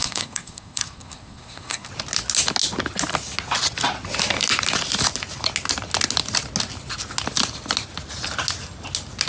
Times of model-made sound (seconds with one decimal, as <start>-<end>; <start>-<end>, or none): 0.0-1.9